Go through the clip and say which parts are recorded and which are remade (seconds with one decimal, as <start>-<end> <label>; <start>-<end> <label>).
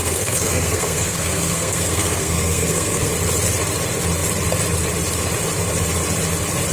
0.0-3.1 remade; 3.1-6.7 recorded